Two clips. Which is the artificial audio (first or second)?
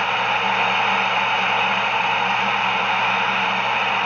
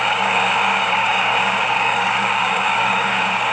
second